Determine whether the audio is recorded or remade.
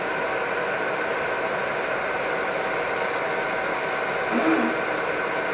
recorded